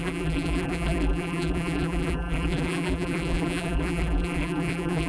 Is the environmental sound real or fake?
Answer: fake